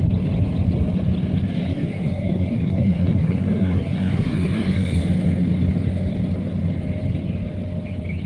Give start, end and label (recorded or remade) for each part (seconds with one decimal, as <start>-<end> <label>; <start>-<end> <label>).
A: 0.0-1.7 recorded; 1.7-5.0 remade; 5.0-8.3 recorded